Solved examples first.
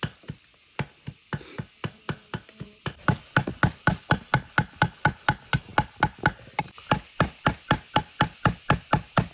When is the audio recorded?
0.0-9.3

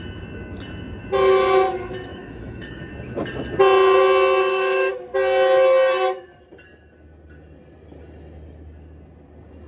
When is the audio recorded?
0.0-2.1; 2.8-4.4; 4.9-9.7

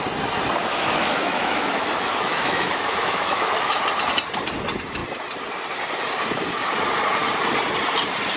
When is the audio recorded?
0.0-0.6; 3.8-8.4

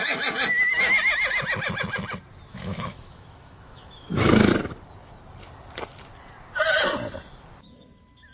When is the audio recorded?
0.0-2.5; 4.5-8.3